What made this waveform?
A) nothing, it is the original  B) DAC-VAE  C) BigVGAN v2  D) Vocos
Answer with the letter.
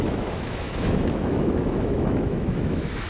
B